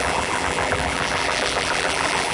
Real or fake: fake